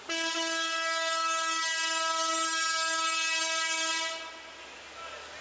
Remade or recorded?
recorded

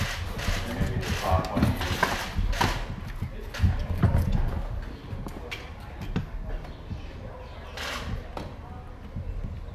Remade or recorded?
recorded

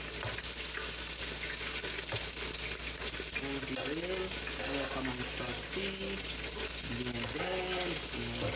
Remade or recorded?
recorded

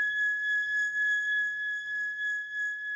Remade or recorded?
remade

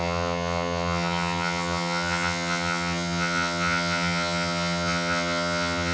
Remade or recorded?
remade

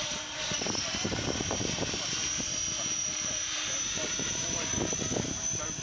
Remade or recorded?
remade